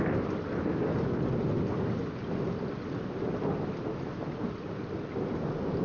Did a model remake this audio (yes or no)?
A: no